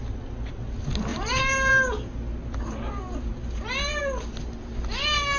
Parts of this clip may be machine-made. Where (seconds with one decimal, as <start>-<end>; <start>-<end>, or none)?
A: 1.1-1.7

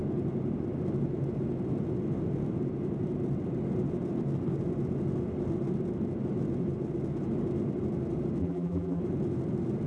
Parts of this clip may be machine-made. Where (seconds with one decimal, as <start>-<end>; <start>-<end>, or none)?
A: 8.4-9.0

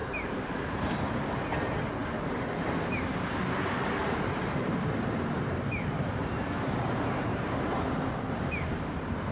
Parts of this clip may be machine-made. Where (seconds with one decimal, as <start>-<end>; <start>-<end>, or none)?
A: 0.0-1.2; 4.0-8.7